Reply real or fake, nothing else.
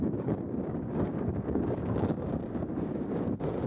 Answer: fake